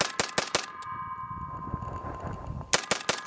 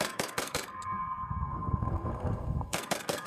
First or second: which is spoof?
second